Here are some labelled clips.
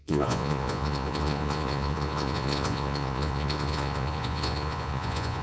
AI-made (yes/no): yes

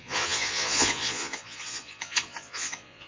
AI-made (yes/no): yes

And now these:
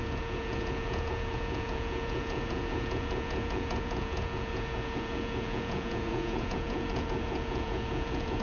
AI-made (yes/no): yes